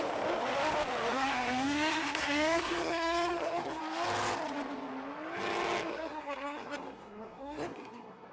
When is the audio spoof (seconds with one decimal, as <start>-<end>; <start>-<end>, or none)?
1.1-3.8; 5.9-8.3